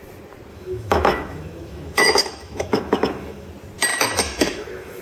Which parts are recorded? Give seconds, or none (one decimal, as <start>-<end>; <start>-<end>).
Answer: 0.0-0.5; 3.5-3.9